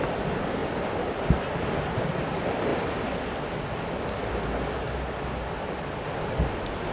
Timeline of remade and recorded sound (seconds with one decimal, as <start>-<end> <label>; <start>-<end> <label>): 0.0-6.9 recorded

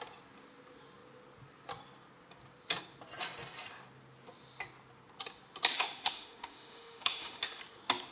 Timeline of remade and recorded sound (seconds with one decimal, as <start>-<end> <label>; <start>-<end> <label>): 0.0-5.7 recorded; 5.7-7.6 remade; 7.6-8.1 recorded

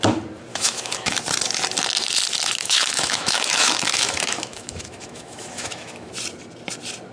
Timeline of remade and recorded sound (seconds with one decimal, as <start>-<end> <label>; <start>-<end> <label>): 0.0-0.5 recorded; 0.5-1.2 remade; 1.2-2.6 recorded; 2.6-6.1 remade; 6.1-7.1 recorded

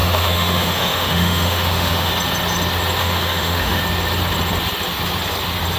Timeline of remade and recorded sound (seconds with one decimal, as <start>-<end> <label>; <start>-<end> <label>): 0.0-2.1 remade; 2.1-3.0 recorded; 3.0-3.8 remade; 3.8-5.8 recorded